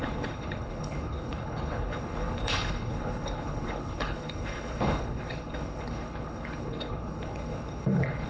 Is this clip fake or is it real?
fake